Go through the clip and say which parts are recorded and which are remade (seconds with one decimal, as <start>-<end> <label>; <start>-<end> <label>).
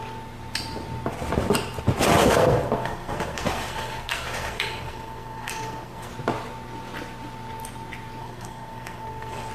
0.0-2.2 recorded; 2.2-6.1 remade; 6.1-8.2 recorded; 8.2-9.5 remade